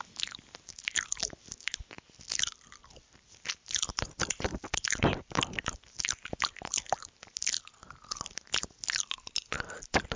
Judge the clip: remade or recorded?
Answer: recorded